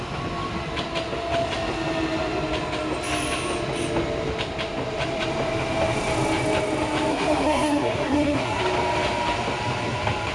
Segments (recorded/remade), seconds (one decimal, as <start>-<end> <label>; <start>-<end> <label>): 0.0-7.1 recorded; 7.1-8.6 remade; 8.6-10.3 recorded